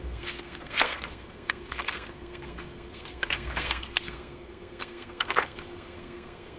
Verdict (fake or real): fake